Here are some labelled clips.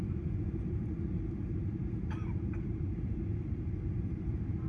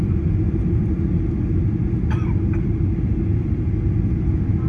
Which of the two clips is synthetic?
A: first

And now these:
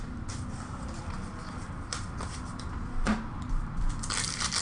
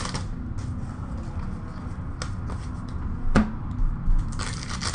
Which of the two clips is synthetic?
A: first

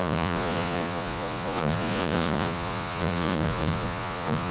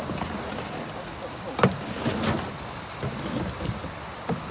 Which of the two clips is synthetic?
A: first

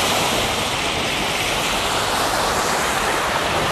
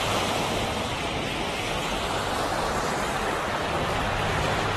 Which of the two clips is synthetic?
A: first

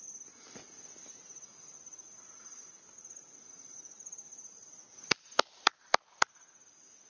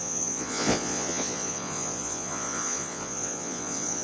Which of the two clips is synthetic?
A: second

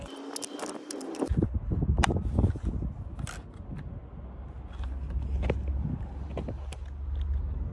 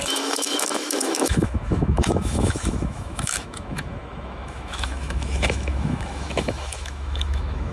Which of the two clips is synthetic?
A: second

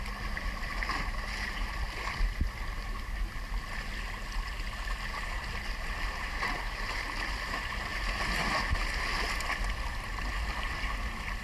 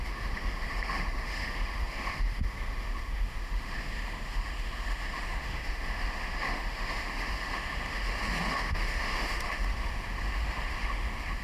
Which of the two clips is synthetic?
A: second